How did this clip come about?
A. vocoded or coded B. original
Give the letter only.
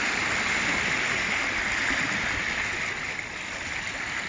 B